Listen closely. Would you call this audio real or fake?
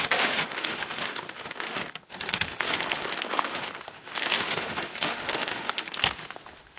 fake